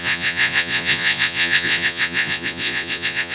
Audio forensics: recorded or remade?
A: remade